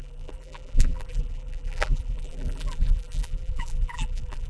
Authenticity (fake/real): fake